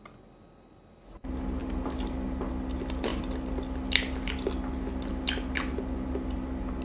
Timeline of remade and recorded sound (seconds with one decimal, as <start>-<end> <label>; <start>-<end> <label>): 0.0-6.8 recorded